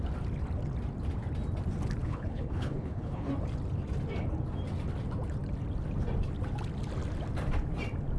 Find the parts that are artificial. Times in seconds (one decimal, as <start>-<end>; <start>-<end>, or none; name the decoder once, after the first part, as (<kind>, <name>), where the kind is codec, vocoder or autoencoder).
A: 2.0-3.3 (codec, HILCodec)